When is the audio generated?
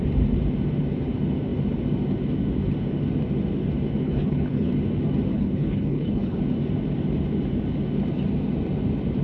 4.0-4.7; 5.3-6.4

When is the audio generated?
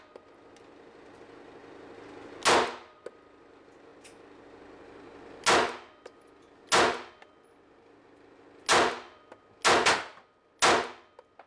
none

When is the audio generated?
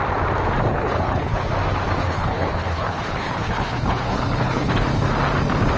0.7-1.4; 2.0-4.7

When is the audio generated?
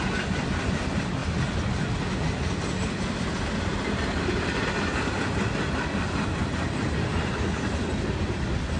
none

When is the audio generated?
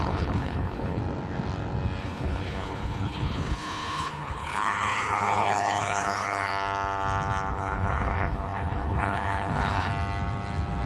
0.0-1.0; 2.0-6.5; 7.5-9.9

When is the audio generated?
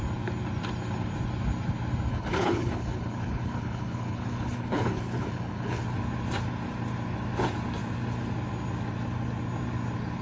2.1-5.8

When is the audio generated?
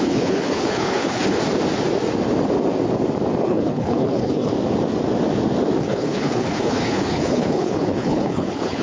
0.0-1.4; 3.4-4.5; 5.8-8.8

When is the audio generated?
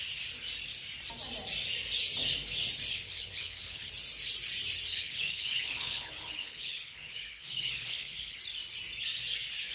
2.9-3.9; 4.9-8.4